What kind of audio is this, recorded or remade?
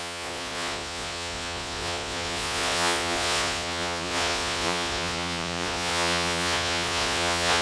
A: remade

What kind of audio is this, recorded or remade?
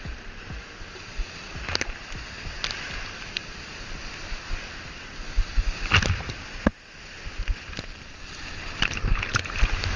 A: recorded